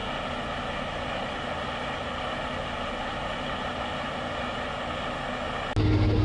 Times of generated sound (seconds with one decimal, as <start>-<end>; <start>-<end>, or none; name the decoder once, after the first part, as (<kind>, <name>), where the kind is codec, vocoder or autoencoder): none